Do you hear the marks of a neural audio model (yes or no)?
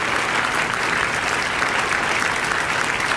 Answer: no